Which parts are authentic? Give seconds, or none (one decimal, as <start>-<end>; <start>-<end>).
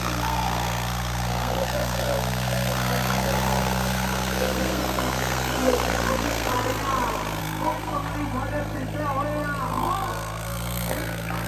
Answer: 6.5-7.4; 8.1-9.6